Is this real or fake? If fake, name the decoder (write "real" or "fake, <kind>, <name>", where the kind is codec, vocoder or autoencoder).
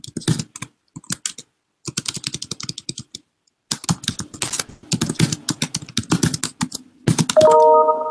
real